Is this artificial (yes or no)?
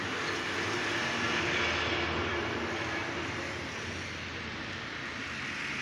no